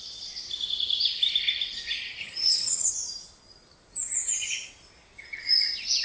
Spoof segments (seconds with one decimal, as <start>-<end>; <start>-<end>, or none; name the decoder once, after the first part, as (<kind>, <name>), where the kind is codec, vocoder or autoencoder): 2.2-2.9 (vocoder, HiFi-GAN)